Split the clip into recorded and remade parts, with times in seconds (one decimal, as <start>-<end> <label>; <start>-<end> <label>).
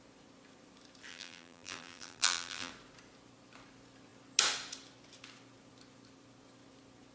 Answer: 0.0-1.1 recorded; 1.1-2.7 remade; 2.7-7.1 recorded